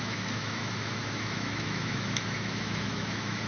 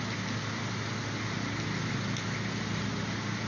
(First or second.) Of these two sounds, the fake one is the first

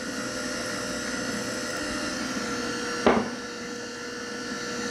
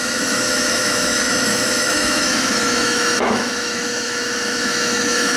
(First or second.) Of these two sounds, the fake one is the second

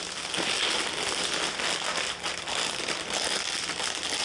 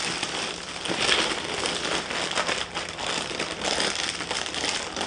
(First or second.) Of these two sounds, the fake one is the second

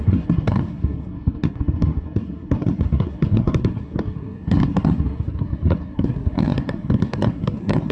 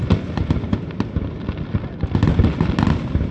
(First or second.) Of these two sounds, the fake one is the first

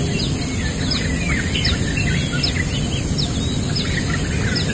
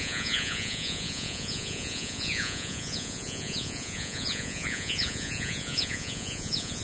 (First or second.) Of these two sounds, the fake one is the second